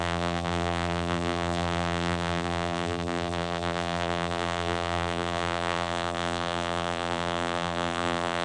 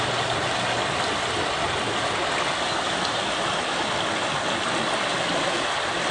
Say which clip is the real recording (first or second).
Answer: second